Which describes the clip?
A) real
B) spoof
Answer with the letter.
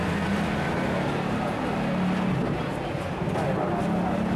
A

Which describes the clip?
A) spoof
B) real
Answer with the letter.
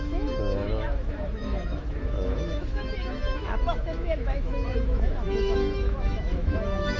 A